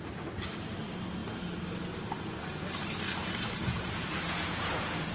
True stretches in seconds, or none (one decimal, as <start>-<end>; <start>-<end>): 0.0-3.6